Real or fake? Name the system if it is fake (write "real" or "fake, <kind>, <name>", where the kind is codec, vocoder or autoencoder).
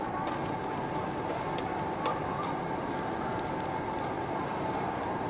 real